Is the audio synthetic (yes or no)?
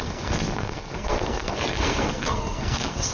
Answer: yes